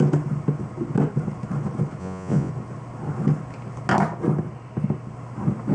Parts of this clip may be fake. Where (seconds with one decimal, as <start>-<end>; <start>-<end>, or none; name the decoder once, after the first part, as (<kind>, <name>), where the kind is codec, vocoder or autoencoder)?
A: 2.0-2.5 (vocoder, Vocos)

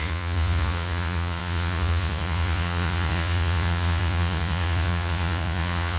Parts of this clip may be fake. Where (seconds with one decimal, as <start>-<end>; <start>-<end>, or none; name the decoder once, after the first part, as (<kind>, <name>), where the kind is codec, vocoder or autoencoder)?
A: 0.0-6.0 (vocoder, Vocos)